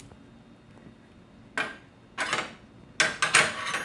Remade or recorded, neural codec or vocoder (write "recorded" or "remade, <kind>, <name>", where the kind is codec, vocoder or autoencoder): recorded